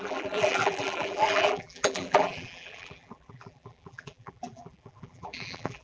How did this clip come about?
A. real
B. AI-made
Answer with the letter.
B